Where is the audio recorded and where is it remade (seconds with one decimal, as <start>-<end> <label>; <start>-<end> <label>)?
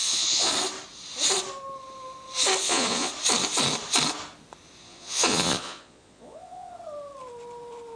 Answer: 0.0-0.5 remade; 0.5-2.6 recorded; 2.6-3.1 remade; 3.1-4.8 recorded; 4.8-6.7 remade; 6.7-8.0 recorded